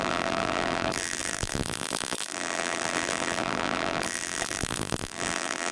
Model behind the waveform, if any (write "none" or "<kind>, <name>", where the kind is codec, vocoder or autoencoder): vocoder, BigVGAN v2